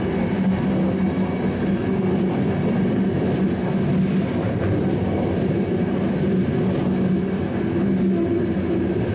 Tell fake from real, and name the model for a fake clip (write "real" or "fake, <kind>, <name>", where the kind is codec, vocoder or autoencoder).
real